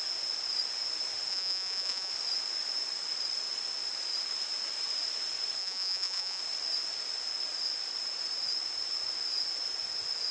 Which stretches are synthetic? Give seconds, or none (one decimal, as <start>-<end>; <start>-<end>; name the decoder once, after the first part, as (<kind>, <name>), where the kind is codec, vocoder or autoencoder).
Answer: 1.3-2.1 (vocoder, Vocos); 5.6-6.4